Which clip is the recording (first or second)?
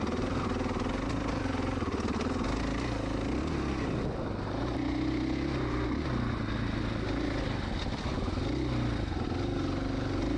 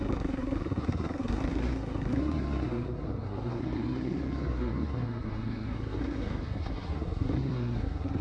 first